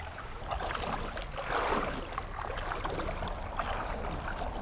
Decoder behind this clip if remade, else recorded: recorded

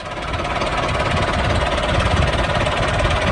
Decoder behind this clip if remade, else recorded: recorded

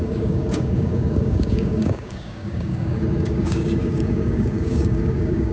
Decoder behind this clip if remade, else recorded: remade, codec, DAC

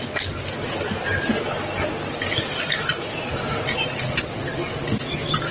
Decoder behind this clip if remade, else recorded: recorded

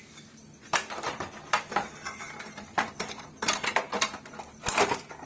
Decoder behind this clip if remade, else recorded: remade, vocoder, BigVGAN v2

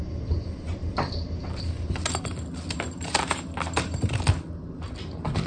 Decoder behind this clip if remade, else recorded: recorded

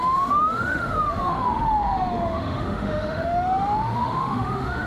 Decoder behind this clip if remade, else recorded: remade, autoencoder, DAC-VAE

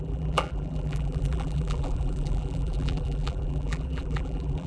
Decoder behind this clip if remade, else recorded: remade, vocoder, BigVGAN v2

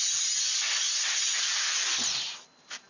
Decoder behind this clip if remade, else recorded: recorded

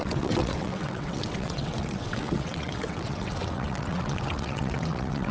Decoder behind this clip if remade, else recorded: remade, vocoder, WaveNeXt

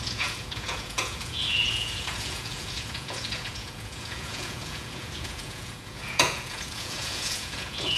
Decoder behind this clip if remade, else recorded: remade, vocoder, Vocos